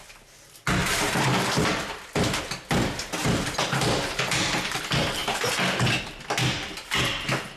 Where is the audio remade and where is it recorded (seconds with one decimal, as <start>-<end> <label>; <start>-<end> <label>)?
0.0-0.8 recorded; 0.8-1.6 remade; 1.6-3.2 recorded; 3.2-4.8 remade; 4.8-7.6 recorded